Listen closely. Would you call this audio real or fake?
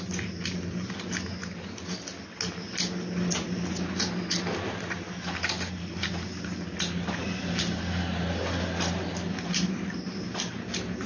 real